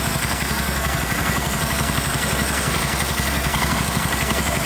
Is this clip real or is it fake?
fake